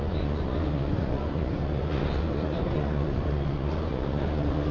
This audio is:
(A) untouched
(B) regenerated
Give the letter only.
B